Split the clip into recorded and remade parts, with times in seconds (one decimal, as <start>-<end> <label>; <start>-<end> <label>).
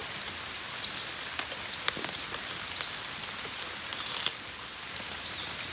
0.0-5.7 recorded